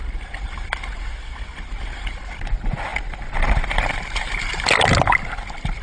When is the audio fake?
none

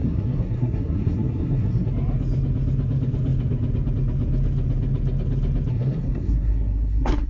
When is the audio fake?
0.0-1.9; 5.7-7.3

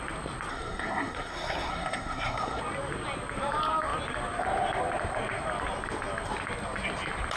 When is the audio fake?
0.5-2.6

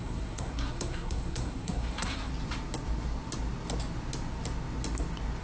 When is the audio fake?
0.0-2.3

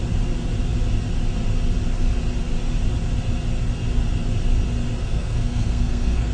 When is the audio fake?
5.0-6.3

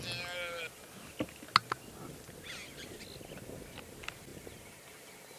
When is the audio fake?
none